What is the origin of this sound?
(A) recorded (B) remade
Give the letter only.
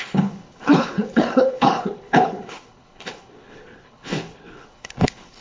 B